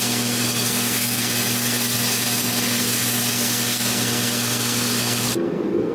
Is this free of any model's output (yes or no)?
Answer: no